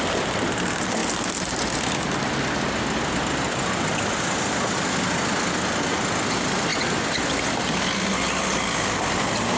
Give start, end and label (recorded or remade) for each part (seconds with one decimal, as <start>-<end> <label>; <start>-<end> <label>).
0.0-9.6 recorded

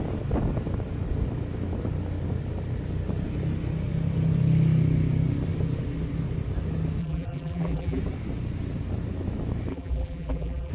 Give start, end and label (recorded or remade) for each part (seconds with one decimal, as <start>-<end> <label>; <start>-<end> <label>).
0.0-7.0 recorded; 7.0-8.0 remade; 8.0-9.7 recorded; 9.7-10.7 remade